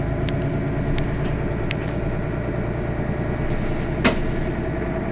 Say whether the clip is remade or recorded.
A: recorded